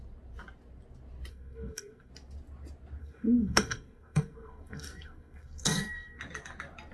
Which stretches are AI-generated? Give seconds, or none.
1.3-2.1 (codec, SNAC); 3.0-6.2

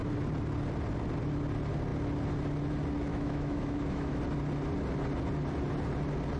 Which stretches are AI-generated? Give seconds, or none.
3.1-4.2 (autoencoder, DAC-VAE)